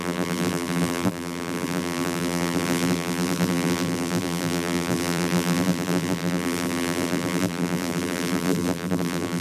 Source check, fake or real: fake